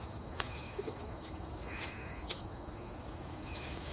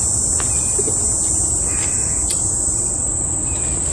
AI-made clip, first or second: first